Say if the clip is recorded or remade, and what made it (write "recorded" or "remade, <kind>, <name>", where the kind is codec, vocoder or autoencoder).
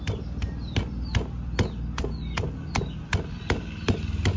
recorded